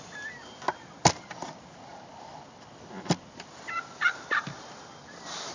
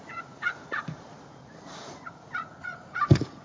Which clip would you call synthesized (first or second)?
second